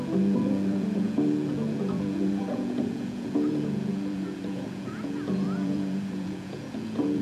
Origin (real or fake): fake